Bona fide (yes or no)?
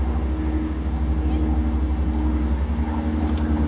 yes